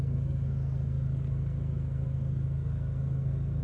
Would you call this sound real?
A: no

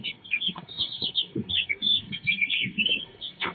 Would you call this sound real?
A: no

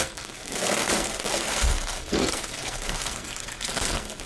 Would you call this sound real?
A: no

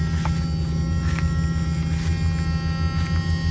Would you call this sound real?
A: yes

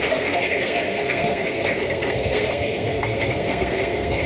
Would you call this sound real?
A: no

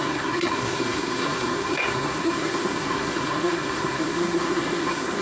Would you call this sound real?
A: no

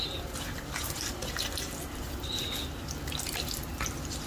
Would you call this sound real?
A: yes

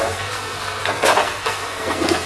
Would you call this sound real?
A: no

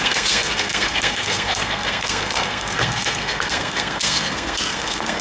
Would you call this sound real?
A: no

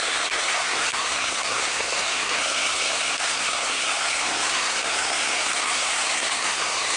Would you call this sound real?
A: no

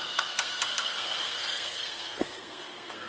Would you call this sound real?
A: no